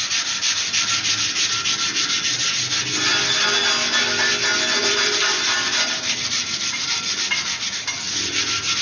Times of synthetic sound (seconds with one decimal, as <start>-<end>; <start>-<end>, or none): 4.8-7.3